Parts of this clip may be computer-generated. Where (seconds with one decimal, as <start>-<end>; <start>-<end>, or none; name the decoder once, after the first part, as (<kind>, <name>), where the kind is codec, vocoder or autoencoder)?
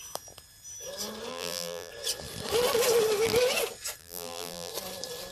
1.3-1.9 (vocoder, BigVGAN v2); 4.0-4.7